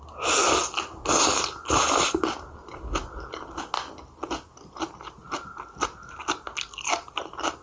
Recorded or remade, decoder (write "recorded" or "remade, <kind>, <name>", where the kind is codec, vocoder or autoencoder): recorded